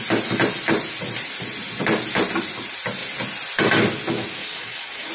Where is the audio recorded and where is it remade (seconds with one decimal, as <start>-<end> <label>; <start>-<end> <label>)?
0.0-4.4 recorded; 4.4-5.1 remade